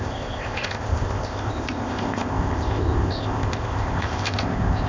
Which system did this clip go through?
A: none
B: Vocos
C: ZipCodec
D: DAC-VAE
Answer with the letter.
C